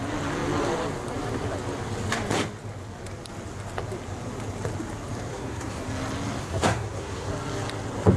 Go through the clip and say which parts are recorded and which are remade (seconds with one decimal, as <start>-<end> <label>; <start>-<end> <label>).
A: 0.0-5.3 recorded; 5.3-5.8 remade; 5.8-6.4 recorded; 6.4-7.3 remade; 7.3-8.2 recorded